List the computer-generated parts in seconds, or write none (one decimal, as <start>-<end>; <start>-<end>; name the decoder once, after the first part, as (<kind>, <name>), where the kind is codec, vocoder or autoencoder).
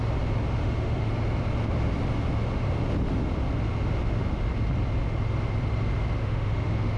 0.6-1.1 (autoencoder, DAC-VAE); 6.2-7.0